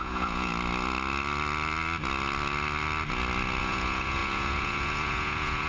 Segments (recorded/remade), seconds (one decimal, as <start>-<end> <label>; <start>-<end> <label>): 0.0-0.5 remade; 0.5-3.6 recorded; 3.6-5.7 remade